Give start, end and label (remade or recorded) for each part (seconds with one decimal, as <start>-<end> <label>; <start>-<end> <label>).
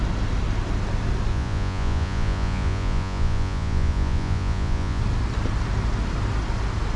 0.0-1.3 recorded; 1.3-5.0 remade; 5.0-7.0 recorded